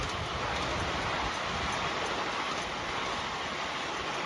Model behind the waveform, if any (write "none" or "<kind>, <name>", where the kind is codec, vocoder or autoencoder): none